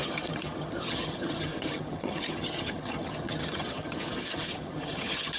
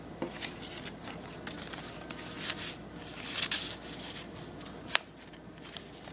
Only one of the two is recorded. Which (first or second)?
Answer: second